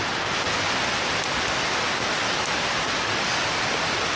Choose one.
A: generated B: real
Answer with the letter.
B